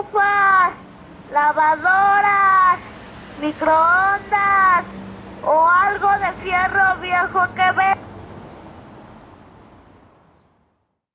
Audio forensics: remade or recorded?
recorded